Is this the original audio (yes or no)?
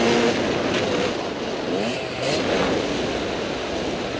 yes